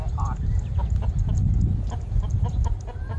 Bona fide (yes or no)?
yes